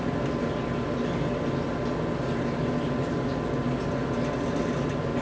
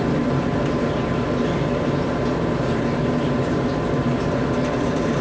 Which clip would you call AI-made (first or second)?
second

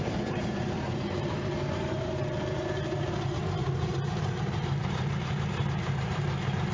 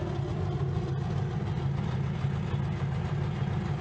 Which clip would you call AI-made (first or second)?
first